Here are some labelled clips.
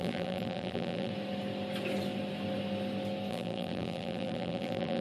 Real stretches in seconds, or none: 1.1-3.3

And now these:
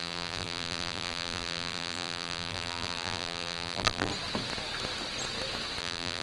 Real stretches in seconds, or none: 4.1-5.8